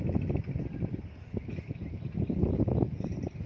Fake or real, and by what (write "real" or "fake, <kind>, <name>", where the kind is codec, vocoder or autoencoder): real